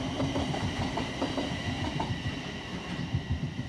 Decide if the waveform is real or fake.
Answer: real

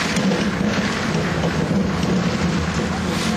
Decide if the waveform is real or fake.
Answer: real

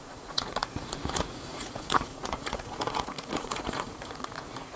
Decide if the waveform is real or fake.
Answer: fake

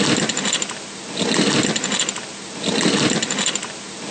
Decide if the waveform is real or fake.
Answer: real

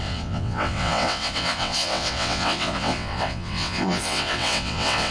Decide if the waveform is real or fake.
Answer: fake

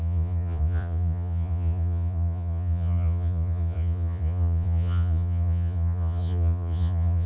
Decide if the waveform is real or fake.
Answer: fake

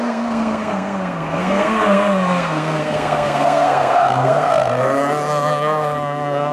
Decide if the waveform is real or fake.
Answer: fake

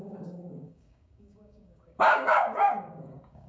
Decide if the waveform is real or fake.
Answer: fake